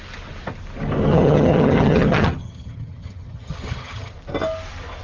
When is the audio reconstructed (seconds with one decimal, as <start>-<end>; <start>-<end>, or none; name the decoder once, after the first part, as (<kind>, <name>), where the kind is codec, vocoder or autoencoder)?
1.1-4.1 (vocoder, HiFi-GAN)